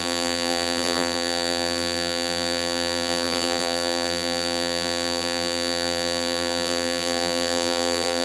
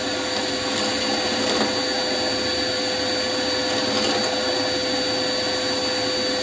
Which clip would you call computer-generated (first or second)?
first